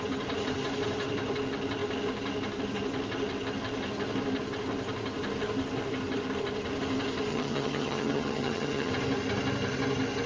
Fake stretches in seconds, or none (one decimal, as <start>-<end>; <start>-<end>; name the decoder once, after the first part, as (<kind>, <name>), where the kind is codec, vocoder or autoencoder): 7.3-8.9 (vocoder, HiFi-GAN)